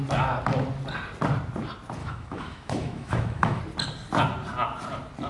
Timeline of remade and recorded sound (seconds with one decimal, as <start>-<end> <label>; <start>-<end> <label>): 0.0-2.0 recorded; 2.0-3.6 remade; 3.6-5.3 recorded